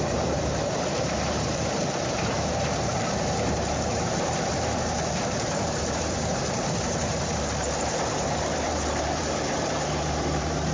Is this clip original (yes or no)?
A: no